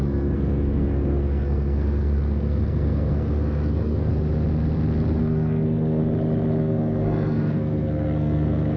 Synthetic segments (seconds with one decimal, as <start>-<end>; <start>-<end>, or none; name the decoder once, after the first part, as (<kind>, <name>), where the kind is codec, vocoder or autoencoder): 0.0-4.1 (codec, SNAC); 5.2-6.0; 6.6-8.8